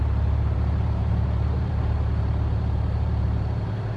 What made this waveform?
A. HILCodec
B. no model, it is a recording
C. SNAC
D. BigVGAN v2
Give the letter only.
D